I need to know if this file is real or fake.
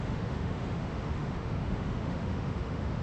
fake